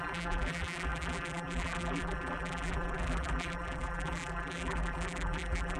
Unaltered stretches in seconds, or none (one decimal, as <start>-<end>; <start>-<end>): none

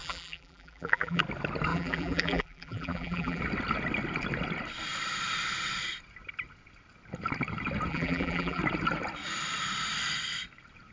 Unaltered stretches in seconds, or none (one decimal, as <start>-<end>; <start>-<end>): 1.2-1.7; 3.4-7.9; 8.6-10.9

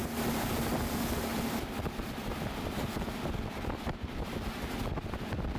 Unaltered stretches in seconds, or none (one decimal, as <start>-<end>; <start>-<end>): 0.0-1.3; 4.7-5.6